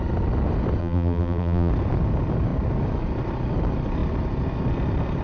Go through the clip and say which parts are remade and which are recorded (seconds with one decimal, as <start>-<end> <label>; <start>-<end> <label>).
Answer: 0.0-0.8 recorded; 0.8-1.7 remade; 1.7-5.2 recorded